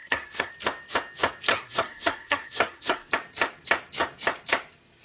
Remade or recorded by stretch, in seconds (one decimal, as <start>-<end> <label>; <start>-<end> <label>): 0.0-0.5 remade; 0.5-1.5 recorded; 1.5-3.1 remade; 3.1-5.0 recorded